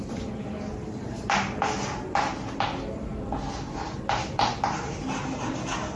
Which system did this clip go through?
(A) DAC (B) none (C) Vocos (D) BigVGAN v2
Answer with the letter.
B